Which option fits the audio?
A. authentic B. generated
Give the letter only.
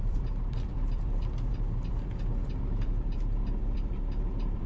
B